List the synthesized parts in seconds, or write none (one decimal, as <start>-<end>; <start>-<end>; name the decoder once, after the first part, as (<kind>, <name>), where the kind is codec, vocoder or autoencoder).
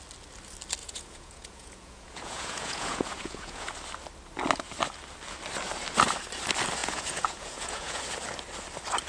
0.8-3.7 (vocoder, Vocos); 6.8-8.0